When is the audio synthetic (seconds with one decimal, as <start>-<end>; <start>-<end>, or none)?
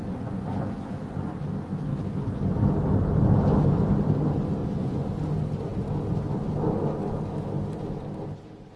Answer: 0.0-1.0; 4.6-5.1